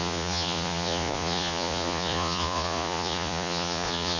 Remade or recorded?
remade